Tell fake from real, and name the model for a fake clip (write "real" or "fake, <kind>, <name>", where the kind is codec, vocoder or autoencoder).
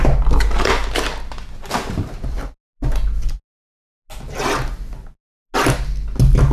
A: real